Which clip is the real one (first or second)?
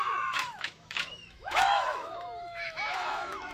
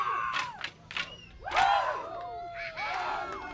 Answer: second